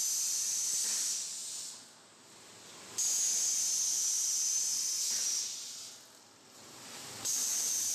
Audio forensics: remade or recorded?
recorded